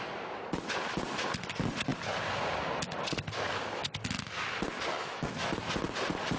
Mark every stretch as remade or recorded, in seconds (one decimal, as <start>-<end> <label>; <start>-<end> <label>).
0.0-4.9 recorded; 4.9-5.5 remade; 5.5-6.4 recorded